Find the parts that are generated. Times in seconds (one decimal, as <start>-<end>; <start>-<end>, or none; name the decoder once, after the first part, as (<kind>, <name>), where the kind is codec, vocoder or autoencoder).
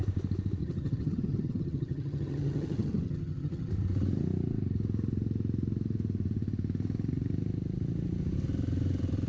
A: 0.6-3.7 (vocoder, HiFi-GAN)